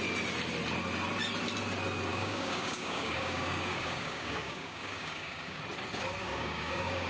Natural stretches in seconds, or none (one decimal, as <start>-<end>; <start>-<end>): 0.0-2.1; 5.6-6.2